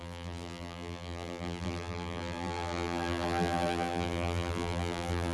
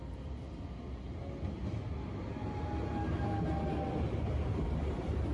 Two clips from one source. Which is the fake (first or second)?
first